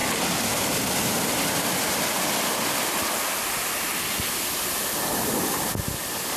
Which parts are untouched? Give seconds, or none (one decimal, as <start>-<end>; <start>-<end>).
0.0-6.4